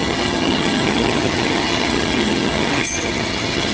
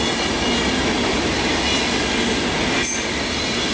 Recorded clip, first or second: second